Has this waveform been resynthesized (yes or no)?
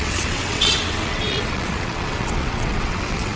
yes